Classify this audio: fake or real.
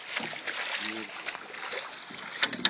real